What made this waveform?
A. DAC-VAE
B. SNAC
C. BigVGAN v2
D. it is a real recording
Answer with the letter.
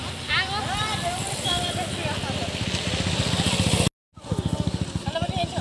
D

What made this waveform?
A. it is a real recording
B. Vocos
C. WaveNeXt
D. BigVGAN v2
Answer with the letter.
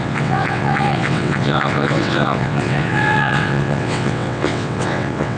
C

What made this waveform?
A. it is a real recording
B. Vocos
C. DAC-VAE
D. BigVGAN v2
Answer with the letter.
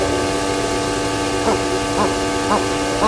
A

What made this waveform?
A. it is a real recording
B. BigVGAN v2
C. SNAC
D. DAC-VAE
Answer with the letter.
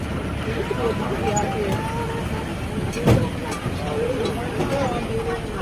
A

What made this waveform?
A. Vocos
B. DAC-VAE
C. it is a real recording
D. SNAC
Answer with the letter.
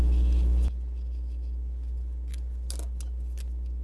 C